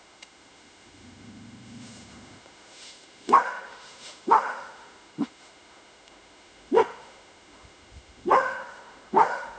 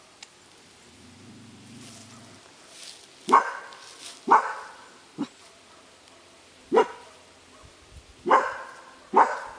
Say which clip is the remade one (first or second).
first